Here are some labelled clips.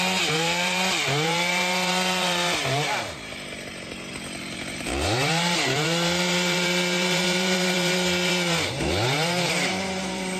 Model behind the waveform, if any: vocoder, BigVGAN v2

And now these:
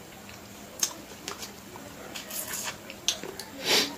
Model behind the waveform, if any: none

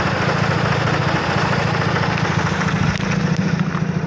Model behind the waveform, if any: vocoder, BigVGAN v2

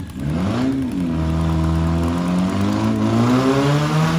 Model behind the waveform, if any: none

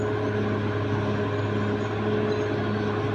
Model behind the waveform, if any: none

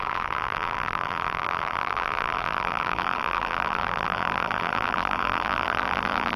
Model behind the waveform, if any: vocoder, BigVGAN v2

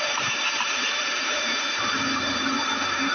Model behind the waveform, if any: vocoder, BigVGAN v2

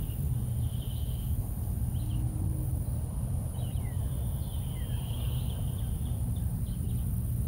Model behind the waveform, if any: none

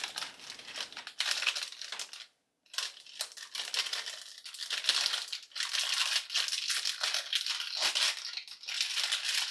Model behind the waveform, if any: none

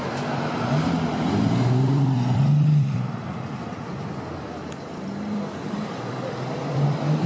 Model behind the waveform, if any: vocoder, BigVGAN v2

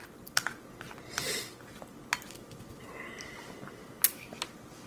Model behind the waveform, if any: none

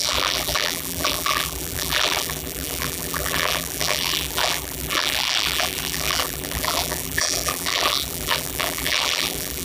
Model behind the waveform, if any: vocoder, BigVGAN v2